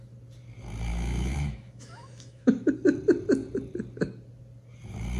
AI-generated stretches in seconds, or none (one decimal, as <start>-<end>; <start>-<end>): 0.9-2.7